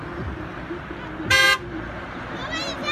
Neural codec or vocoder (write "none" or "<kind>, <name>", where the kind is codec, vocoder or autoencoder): none